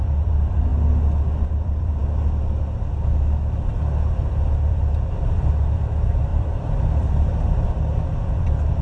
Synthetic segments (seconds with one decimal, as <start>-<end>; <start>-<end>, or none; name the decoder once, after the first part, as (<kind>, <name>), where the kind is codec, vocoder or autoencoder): 0.0-0.7 (vocoder, BigVGAN v2); 1.5-2.0; 4.1-8.8